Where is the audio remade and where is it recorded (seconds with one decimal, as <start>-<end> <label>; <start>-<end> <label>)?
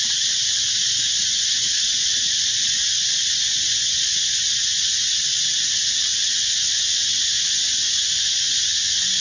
0.0-0.8 recorded; 0.8-5.2 remade; 5.2-6.1 recorded; 6.1-9.2 remade